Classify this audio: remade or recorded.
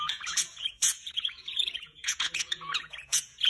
remade